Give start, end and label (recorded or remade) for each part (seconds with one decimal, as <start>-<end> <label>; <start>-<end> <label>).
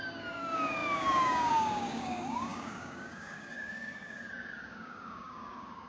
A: 0.0-5.9 remade